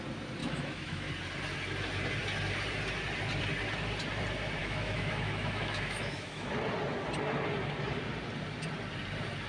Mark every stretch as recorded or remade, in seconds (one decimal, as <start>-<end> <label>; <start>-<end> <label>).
0.0-0.4 recorded; 0.4-1.1 remade; 1.1-4.6 recorded; 4.6-6.5 remade; 6.5-9.5 recorded